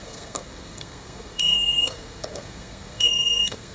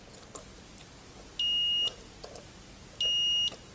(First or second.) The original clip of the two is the second